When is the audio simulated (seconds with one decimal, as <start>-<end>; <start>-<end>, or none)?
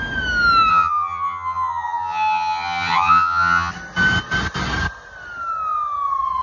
0.7-3.7